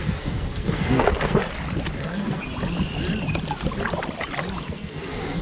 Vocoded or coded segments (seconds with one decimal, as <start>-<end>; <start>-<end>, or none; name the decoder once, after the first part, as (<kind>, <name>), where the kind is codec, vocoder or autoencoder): 0.0-1.4 (codec, SNAC); 2.0-2.4; 4.7-5.4